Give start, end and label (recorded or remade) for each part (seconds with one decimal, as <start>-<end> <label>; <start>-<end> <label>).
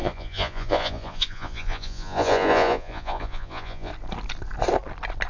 0.0-3.9 remade; 3.9-5.3 recorded